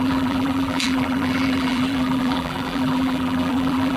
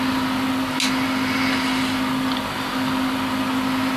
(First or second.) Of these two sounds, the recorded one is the second